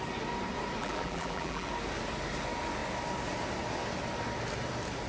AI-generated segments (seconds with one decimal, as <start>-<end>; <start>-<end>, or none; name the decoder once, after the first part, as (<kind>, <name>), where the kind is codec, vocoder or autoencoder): 0.8-1.7 (vocoder, BigVGAN v2)